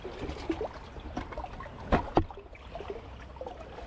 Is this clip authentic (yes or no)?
yes